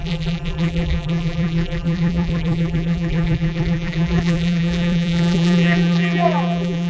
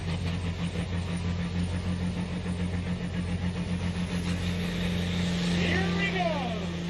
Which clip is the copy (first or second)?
first